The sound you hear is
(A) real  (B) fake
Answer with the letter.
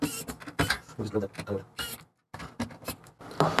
A